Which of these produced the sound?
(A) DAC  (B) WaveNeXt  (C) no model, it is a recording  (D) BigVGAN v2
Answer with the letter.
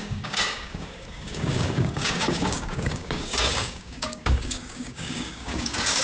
A